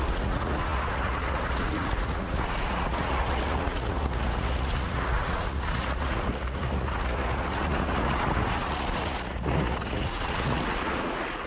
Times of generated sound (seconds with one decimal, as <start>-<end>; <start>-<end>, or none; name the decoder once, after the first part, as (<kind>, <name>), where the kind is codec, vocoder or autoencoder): 0.0-11.5 (vocoder, Vocos)